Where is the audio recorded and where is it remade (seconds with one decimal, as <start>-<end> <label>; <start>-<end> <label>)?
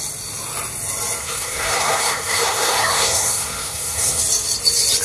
0.0-1.2 recorded; 1.2-4.2 remade; 4.2-5.0 recorded